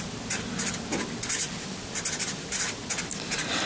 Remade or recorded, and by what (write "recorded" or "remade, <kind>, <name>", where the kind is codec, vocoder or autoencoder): recorded